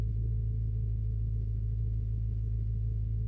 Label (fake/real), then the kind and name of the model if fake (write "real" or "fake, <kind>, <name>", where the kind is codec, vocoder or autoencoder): fake, autoencoder, DAC-VAE